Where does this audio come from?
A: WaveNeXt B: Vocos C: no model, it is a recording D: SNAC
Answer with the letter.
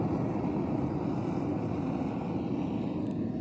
C